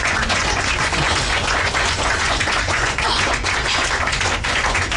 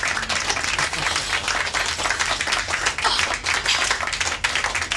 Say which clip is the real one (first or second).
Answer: second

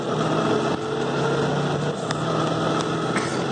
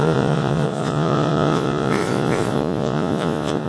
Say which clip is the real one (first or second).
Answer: first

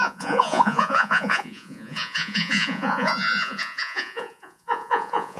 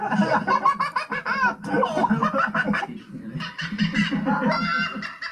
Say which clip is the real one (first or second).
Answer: second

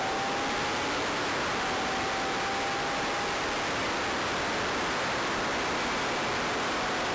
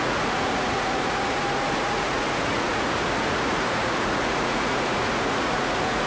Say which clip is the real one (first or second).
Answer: first